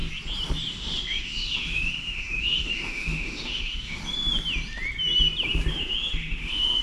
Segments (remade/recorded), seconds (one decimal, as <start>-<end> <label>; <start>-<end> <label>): 0.0-0.7 recorded; 0.7-4.0 remade; 4.0-5.7 recorded; 5.7-6.8 remade